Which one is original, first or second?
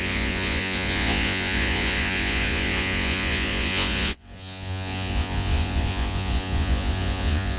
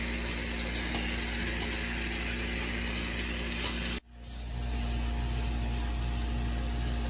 second